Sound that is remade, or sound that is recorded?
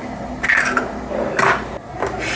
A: recorded